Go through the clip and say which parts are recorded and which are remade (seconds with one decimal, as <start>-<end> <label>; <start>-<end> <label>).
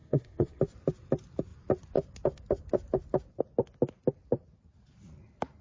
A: 0.0-0.6 remade; 0.6-5.6 recorded